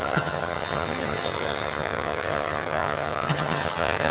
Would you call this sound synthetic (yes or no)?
yes